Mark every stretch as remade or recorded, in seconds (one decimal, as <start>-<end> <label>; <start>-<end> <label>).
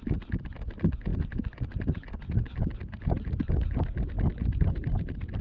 0.0-5.4 recorded